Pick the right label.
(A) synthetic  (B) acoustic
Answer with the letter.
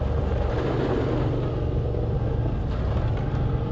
B